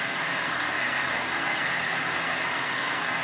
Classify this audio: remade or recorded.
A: remade